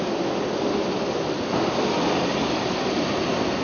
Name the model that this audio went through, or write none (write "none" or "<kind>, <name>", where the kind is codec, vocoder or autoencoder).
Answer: vocoder, BigVGAN v2